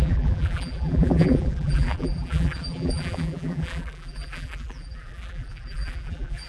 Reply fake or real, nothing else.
fake